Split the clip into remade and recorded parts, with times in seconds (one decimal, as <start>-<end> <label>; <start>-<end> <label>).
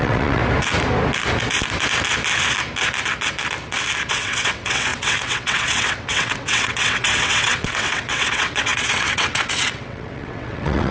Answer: 0.0-0.4 remade; 0.4-4.1 recorded; 4.1-10.9 remade